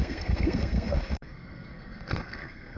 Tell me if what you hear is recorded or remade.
remade